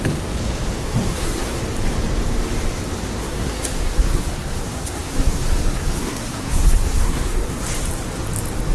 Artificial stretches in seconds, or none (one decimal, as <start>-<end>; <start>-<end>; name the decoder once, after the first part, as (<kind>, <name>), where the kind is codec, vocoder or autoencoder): 0.8-1.6 (codec, SNAC); 3.2-7.6